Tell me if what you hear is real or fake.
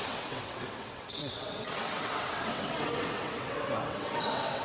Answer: fake